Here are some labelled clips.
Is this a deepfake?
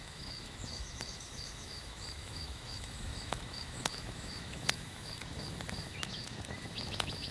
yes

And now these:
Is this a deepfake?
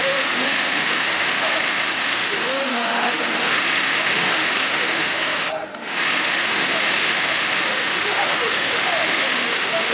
yes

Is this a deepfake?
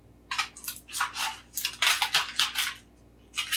no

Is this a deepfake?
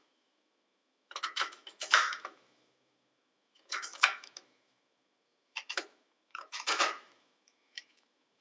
yes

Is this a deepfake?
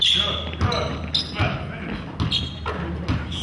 no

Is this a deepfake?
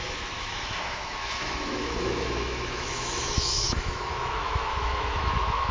yes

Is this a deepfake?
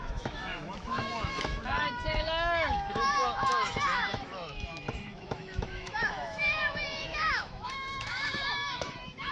yes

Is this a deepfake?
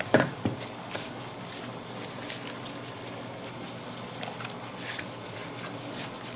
no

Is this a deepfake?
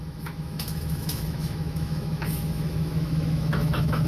yes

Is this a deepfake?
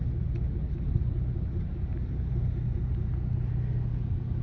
no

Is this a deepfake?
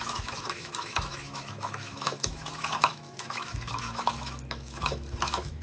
yes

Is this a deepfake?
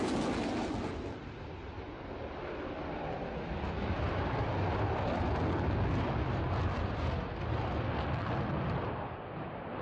no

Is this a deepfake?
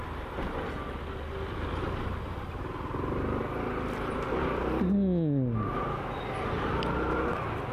no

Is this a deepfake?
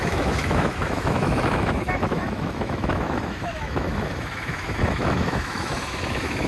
yes